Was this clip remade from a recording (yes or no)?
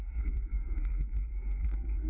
yes